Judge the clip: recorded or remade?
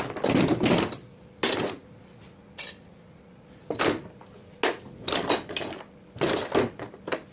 recorded